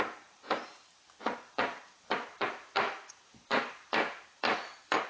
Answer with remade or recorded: remade